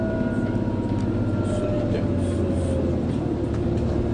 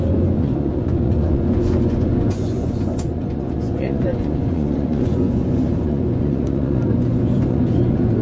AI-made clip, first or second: second